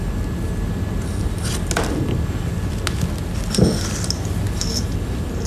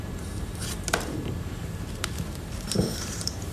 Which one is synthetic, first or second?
second